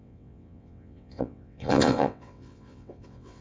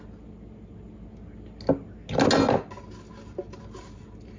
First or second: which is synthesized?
first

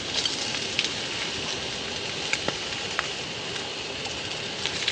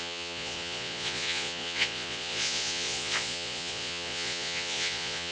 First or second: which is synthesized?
second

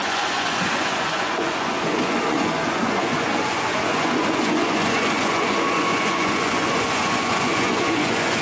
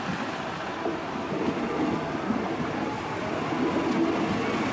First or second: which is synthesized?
first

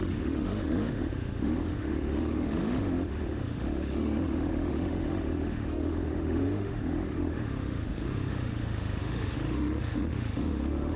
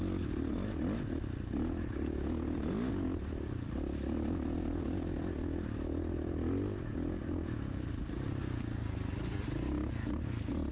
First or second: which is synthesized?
first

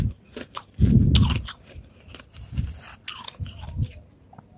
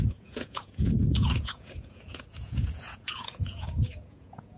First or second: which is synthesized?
second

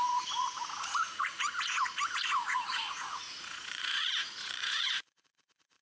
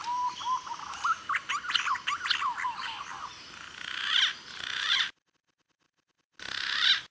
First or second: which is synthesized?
first